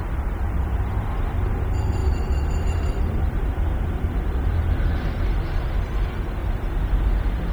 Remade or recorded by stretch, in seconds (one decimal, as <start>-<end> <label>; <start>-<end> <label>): 0.0-2.0 recorded; 2.0-5.2 remade; 5.2-6.4 recorded; 6.4-7.5 remade